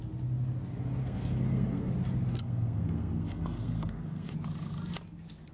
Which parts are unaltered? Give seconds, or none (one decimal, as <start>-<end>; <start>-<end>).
0.0-1.0; 1.9-2.3; 4.3-5.5